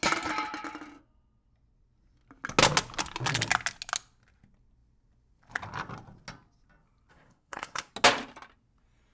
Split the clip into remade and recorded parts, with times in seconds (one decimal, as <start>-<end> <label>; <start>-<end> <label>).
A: 0.0-7.1 recorded; 7.1-7.9 remade; 7.9-9.1 recorded